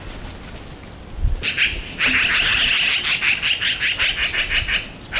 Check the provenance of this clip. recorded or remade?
recorded